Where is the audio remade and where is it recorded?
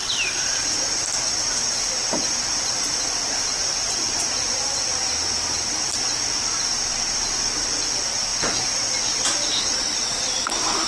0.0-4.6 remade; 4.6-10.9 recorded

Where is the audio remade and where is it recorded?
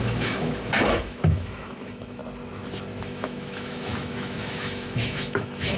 0.0-2.2 remade; 2.2-3.0 recorded; 3.0-5.8 remade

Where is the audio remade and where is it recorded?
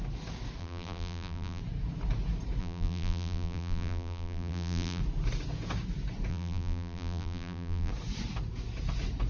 0.0-0.6 recorded; 0.6-1.6 remade; 1.6-2.6 recorded; 2.6-5.0 remade; 5.0-6.3 recorded; 6.3-7.9 remade; 7.9-9.3 recorded